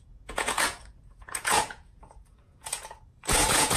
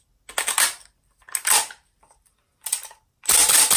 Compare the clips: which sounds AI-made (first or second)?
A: first